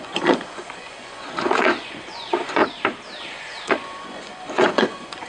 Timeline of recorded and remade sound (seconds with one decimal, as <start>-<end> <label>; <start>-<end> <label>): 0.0-2.6 remade; 2.6-3.2 recorded; 3.2-5.3 remade

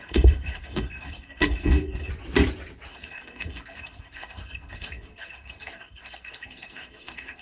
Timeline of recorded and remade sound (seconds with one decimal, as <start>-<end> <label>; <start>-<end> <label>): 0.0-2.1 remade; 2.1-2.9 recorded; 2.9-7.4 remade